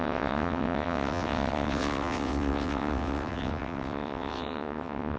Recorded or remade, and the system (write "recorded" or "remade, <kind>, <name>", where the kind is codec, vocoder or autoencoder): remade, vocoder, WaveNeXt